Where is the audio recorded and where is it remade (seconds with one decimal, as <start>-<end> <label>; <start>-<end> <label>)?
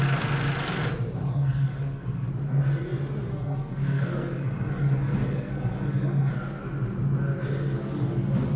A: 0.0-1.2 recorded; 1.2-2.3 remade; 2.3-3.3 recorded; 3.3-6.3 remade; 6.3-8.6 recorded